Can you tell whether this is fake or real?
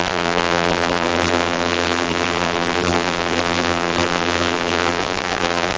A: fake